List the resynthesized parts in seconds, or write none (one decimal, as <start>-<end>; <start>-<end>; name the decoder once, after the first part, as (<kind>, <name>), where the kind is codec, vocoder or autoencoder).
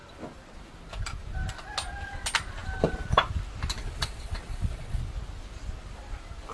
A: 3.8-5.0 (vocoder, Vocos)